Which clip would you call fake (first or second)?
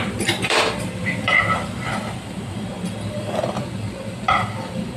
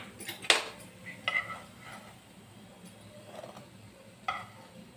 first